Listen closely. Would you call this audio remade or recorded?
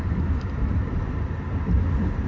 recorded